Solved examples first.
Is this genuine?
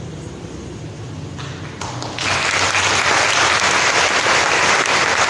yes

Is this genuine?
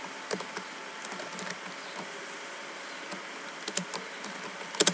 yes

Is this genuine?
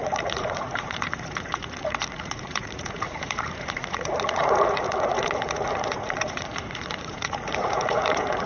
no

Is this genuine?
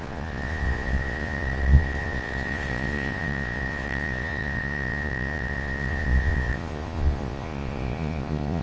no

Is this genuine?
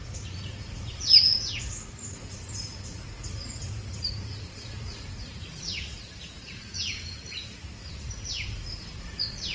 no